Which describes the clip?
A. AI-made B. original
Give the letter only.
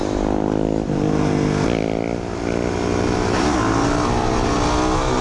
B